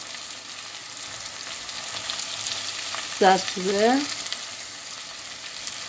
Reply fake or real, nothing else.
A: real